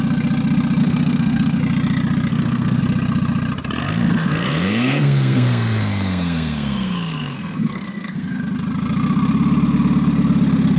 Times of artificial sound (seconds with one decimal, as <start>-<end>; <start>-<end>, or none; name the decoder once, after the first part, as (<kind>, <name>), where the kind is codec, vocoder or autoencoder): 0.8-1.6 (codec, SNAC); 2.3-2.8; 3.8-8.4